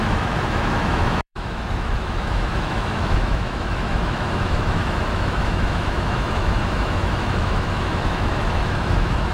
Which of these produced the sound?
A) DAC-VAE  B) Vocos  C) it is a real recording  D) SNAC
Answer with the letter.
A